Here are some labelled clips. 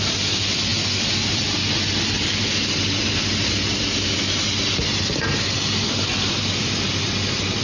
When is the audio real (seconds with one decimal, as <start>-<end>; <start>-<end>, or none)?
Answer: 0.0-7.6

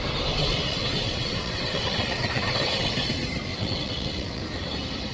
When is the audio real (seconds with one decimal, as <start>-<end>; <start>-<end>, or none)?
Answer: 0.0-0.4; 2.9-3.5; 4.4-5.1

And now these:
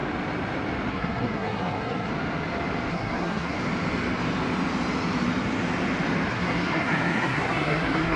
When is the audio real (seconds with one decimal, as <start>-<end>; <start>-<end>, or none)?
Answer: 0.0-0.9; 2.1-2.9; 3.5-6.3